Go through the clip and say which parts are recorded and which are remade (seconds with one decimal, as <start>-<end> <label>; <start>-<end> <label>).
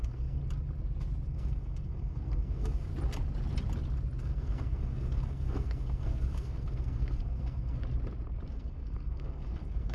0.0-0.4 remade; 0.4-1.3 recorded; 1.3-2.9 remade; 2.9-4.2 recorded; 4.2-7.8 remade; 7.8-8.5 recorded; 8.5-9.9 remade